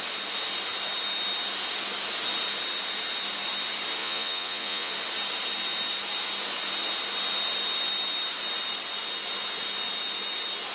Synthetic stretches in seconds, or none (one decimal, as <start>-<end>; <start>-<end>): 4.0-4.9